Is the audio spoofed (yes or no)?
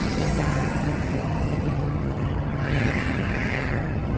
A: yes